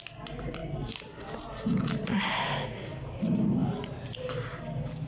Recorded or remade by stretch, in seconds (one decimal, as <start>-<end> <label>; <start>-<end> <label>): 0.0-2.9 recorded; 2.9-4.2 remade; 4.2-5.1 recorded